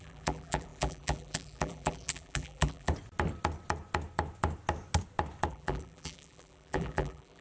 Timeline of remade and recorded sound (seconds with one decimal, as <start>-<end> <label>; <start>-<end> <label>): 0.0-2.9 remade; 2.9-5.5 recorded; 5.5-7.4 remade